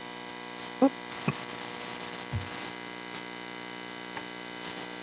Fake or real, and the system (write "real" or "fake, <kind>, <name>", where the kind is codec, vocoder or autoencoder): real